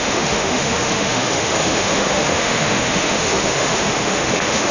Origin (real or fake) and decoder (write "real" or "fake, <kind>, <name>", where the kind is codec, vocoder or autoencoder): fake, autoencoder, DAC-VAE